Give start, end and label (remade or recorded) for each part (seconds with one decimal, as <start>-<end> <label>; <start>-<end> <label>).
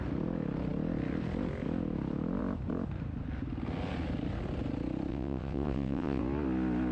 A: 0.0-5.1 recorded; 5.1-6.2 remade; 6.2-6.9 recorded